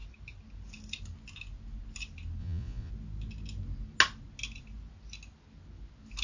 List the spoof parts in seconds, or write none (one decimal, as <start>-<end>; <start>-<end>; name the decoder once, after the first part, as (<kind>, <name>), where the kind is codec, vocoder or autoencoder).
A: 2.4-2.9 (vocoder, Vocos)